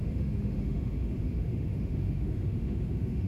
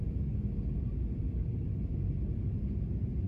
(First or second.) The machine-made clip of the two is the first